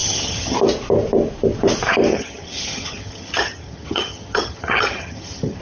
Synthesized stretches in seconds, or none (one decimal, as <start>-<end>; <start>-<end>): 0.0-0.6; 2.1-5.6